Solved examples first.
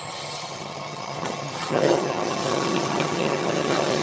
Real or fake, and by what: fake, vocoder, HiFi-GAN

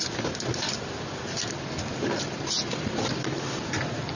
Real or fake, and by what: real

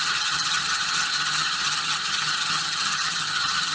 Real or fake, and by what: fake, vocoder, HiFi-GAN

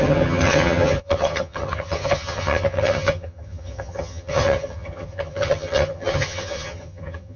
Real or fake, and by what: fake, vocoder, HiFi-GAN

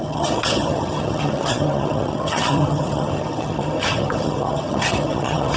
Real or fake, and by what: fake, vocoder, HiFi-GAN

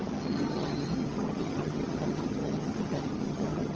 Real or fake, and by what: fake, vocoder, HiFi-GAN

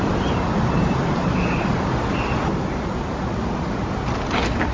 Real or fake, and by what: real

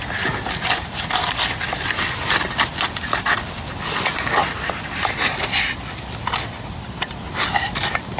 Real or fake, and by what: real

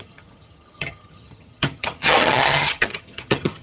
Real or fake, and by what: fake, vocoder, HiFi-GAN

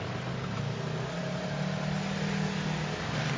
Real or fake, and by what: real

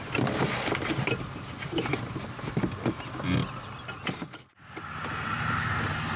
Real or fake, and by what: real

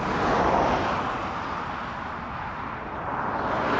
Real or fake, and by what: real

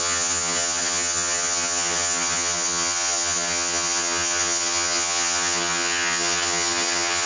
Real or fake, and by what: fake, vocoder, HiFi-GAN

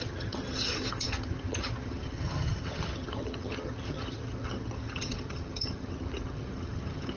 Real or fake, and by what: fake, vocoder, HiFi-GAN